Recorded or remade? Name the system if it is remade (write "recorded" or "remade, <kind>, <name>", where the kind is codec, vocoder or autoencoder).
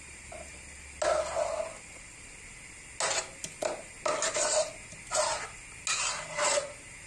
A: recorded